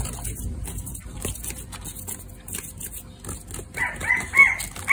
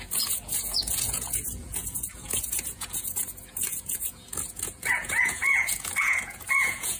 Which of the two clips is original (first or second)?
first